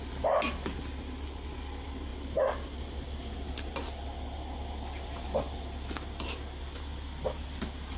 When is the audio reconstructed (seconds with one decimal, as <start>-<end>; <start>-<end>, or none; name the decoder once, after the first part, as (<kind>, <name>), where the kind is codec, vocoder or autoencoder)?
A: none